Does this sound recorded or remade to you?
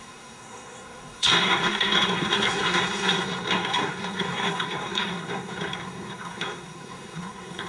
remade